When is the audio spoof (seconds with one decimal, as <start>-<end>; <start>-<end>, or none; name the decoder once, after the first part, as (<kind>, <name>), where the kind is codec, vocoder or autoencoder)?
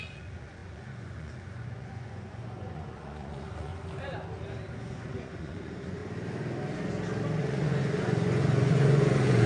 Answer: 0.0-3.7 (vocoder, Vocos); 4.8-6.0; 7.4-9.5